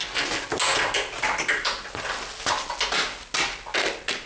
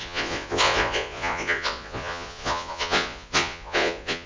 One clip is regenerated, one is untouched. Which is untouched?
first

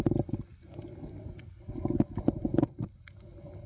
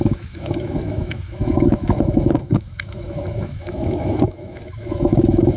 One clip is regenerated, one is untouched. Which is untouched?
first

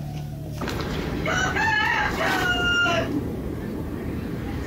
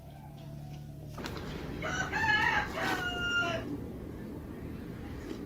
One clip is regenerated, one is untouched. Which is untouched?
second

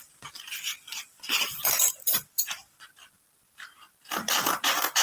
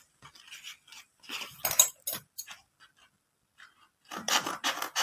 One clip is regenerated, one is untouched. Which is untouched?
second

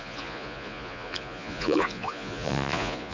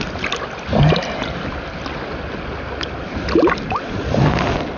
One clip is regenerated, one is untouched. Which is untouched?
second